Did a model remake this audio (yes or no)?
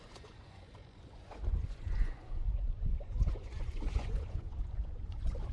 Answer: yes